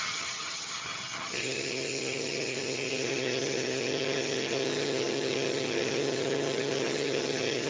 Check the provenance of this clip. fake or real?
fake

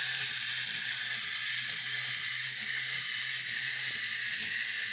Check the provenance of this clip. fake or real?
real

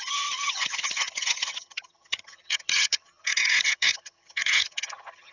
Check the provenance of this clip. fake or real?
fake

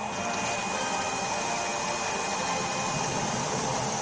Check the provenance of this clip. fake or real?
real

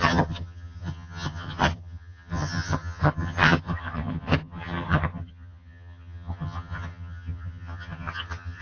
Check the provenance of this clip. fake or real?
fake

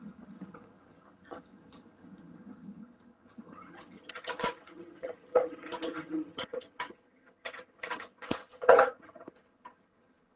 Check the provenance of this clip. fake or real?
fake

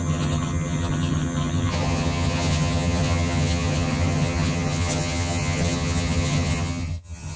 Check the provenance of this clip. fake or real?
fake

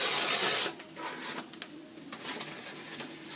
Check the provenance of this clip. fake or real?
real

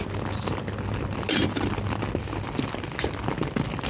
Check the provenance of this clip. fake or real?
real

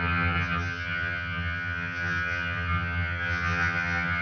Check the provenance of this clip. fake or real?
fake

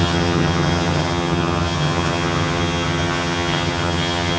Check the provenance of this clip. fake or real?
fake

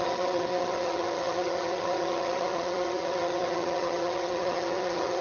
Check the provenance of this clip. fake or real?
fake